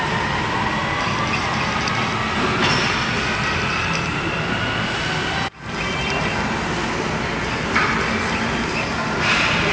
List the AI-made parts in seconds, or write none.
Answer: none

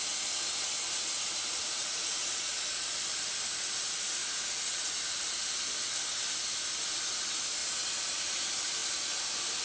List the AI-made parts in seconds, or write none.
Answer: 1.6-2.5 (vocoder, Vocos); 4.2-5.0

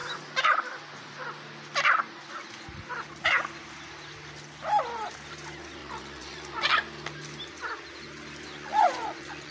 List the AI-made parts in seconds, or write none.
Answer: 5.8-6.6 (vocoder, Vocos); 8.5-9.5

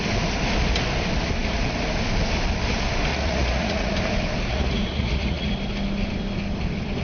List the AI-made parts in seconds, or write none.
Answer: 3.1-3.9 (vocoder, Vocos); 4.5-5.5

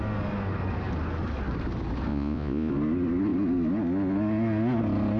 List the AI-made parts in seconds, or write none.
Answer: 2.1-2.7 (vocoder, Vocos)

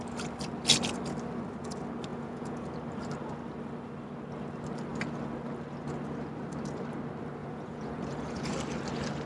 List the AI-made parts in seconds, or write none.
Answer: 2.1-2.7 (vocoder, Vocos); 7.4-8.5

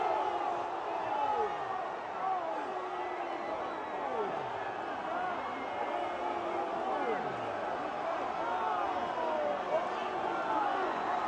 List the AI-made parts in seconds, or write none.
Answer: 10.0-11.3 (vocoder, Vocos)

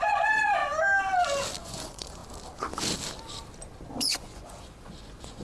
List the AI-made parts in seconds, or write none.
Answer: 0.0-0.6 (vocoder, Vocos); 1.6-2.2; 4.0-5.4